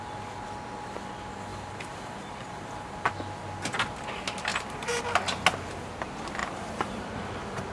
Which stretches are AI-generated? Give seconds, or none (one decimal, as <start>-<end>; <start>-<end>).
1.5-3.1; 4.5-5.0; 6.4-7.7